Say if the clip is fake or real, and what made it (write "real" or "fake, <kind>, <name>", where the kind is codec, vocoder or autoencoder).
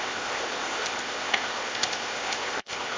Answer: fake, codec, ZipCodec